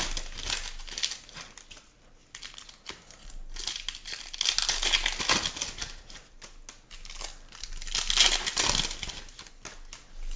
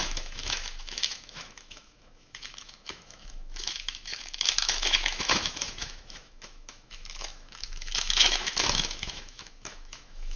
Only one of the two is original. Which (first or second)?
first